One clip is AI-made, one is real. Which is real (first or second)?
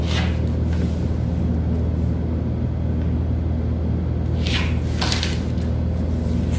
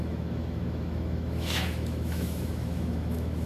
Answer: first